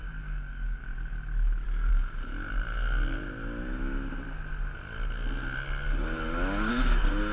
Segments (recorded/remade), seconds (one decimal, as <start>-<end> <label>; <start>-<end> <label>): 0.0-0.8 remade; 0.8-1.9 recorded; 1.9-2.3 remade; 2.3-6.7 recorded; 6.7-7.3 remade